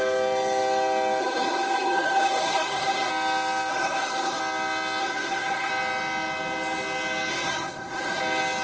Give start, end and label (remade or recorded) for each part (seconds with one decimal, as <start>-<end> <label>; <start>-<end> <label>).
0.0-1.2 recorded; 1.2-3.1 remade; 3.1-3.7 recorded; 3.7-4.4 remade; 4.4-5.0 recorded; 5.0-5.7 remade; 5.7-7.3 recorded; 7.3-8.2 remade; 8.2-8.6 recorded